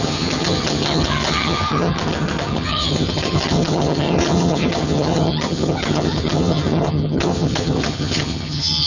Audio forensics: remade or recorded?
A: remade